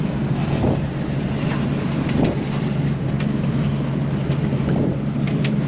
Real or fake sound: real